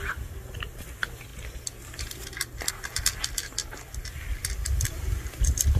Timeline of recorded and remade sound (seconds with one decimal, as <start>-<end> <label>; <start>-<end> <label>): 0.0-5.8 recorded